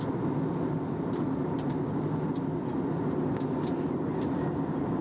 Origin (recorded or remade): recorded